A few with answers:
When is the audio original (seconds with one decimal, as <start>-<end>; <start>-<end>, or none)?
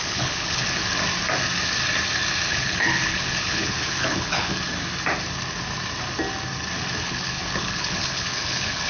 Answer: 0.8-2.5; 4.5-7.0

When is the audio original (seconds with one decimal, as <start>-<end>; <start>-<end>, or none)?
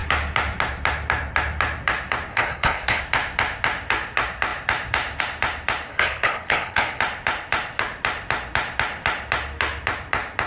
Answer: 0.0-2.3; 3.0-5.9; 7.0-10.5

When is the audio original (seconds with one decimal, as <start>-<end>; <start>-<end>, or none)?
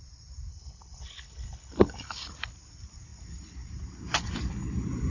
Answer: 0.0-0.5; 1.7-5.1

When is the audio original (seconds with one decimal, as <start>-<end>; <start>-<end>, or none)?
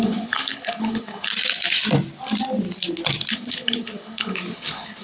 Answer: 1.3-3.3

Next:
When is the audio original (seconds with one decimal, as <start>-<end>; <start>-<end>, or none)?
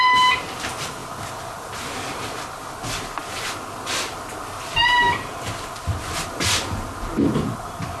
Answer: 0.0-8.0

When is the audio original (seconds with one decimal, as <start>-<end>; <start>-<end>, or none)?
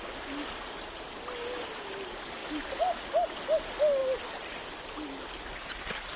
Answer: 0.0-6.2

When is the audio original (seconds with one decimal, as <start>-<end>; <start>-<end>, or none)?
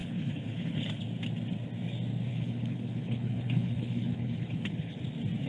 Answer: 1.0-2.3; 5.0-5.5